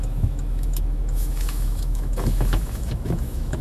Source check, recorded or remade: remade